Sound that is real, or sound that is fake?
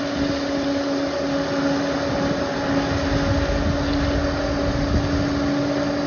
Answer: real